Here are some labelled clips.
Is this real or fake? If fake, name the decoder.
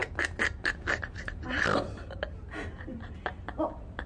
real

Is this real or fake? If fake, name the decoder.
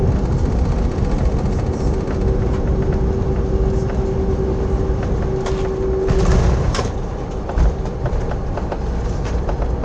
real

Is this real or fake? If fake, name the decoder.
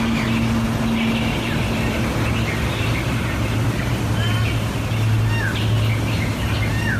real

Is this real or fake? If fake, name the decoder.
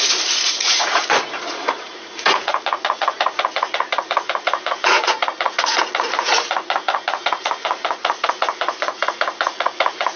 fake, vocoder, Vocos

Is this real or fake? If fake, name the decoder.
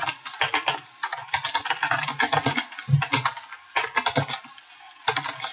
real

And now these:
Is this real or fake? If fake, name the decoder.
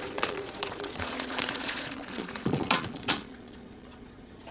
fake, vocoder, Vocos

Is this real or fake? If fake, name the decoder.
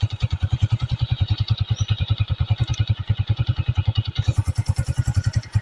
fake, vocoder, Vocos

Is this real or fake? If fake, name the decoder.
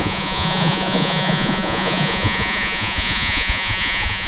fake, vocoder, Vocos